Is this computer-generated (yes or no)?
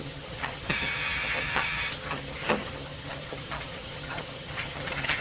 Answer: yes